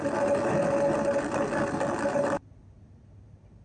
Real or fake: real